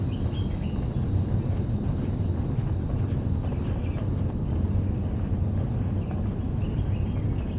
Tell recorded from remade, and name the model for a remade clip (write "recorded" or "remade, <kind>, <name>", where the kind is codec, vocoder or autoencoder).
recorded